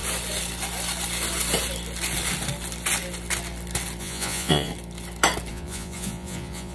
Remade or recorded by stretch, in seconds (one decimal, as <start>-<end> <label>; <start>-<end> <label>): 0.0-4.0 recorded; 4.0-4.7 remade; 4.7-5.5 recorded; 5.5-6.7 remade